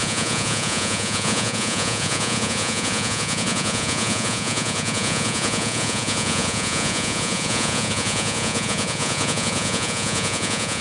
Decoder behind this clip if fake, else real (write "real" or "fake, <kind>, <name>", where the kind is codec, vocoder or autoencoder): fake, vocoder, Vocos